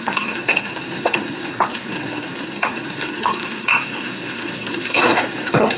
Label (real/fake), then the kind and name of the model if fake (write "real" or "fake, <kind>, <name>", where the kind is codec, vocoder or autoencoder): fake, codec, SNAC